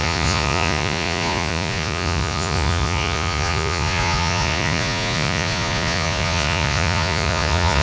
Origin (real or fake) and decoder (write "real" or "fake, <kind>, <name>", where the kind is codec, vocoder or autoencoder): fake, vocoder, Vocos